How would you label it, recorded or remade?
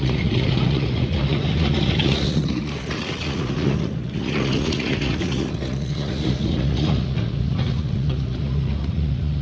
remade